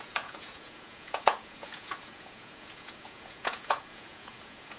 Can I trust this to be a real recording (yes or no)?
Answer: no